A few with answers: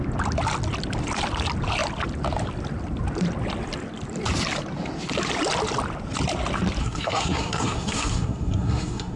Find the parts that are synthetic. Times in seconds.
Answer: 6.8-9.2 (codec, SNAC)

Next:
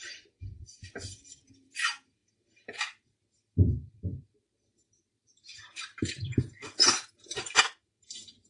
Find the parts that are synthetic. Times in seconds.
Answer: 0.0-5.5 (vocoder, BigVGAN v2); 7.1-8.5

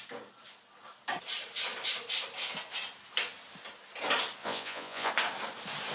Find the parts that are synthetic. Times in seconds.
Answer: 4.4-5.1 (vocoder, Vocos)

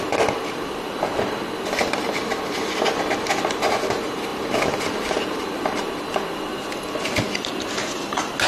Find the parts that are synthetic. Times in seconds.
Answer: none

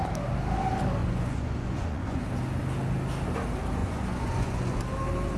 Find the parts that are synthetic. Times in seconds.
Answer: 1.0-2.2 (vocoder, Vocos); 3.8-4.8

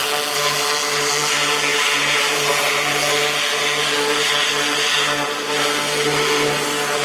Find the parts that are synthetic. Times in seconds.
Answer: 1.7-2.5 (vocoder, BigVGAN v2)

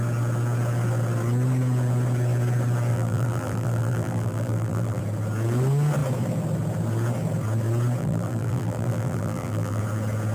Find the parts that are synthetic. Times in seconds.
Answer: 2.9-5.0 (vocoder, BigVGAN v2); 8.0-9.8